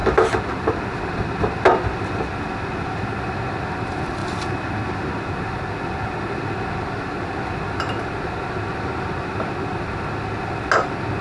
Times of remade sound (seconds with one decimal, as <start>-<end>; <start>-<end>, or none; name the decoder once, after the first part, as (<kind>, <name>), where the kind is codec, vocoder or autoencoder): none